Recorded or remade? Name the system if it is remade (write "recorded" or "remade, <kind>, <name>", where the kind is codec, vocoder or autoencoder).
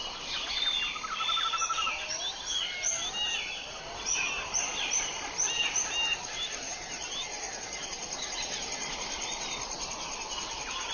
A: recorded